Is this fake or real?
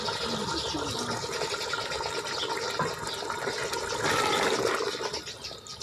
real